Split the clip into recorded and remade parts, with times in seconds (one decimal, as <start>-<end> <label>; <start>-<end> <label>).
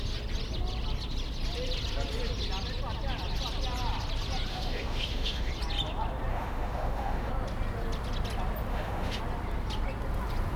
0.0-4.5 recorded; 4.5-5.5 remade; 5.5-6.3 recorded; 6.3-7.3 remade; 7.3-8.7 recorded; 8.7-9.2 remade; 9.2-10.6 recorded